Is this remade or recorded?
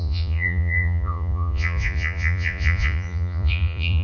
remade